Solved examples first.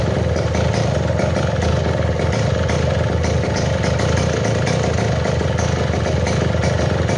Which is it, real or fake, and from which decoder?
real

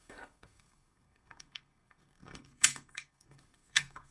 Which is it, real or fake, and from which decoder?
fake, codec, SNAC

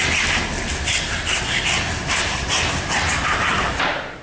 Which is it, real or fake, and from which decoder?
real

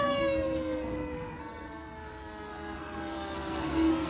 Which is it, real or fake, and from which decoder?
fake, codec, SNAC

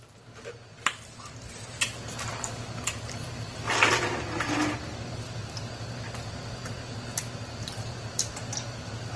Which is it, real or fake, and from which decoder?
real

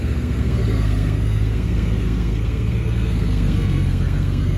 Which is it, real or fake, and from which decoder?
fake, codec, SNAC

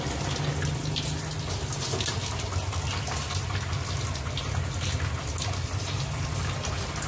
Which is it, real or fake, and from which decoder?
real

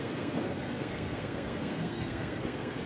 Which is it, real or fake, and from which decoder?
fake, codec, SNAC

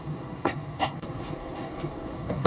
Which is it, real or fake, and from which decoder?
fake, codec, SNAC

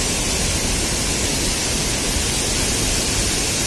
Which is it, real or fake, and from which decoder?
real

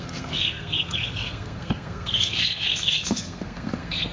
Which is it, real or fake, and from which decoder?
fake, codec, SNAC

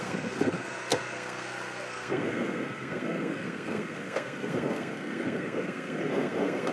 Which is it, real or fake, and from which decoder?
fake, codec, SNAC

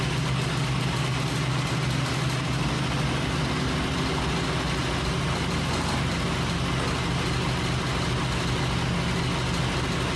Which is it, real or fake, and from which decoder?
real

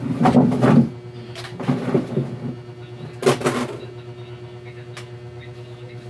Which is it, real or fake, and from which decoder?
real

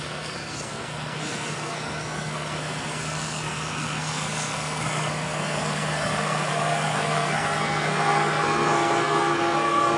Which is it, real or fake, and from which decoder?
fake, codec, SNAC